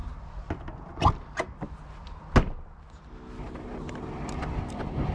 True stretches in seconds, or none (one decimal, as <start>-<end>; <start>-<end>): 0.0-5.1